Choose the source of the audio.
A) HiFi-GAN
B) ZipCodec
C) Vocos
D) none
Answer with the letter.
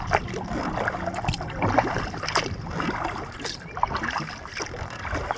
D